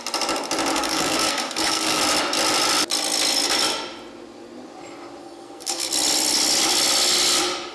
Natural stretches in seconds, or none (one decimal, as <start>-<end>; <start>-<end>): 0.0-0.7; 2.0-5.2; 5.9-7.7